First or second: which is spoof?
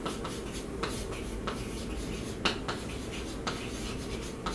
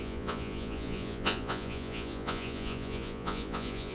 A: second